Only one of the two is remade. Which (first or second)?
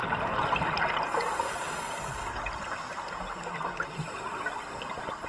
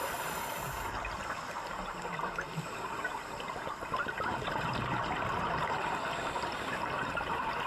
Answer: second